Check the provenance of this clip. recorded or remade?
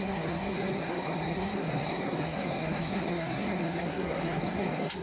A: remade